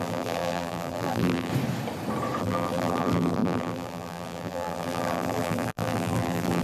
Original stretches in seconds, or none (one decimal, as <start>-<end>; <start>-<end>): 1.5-2.4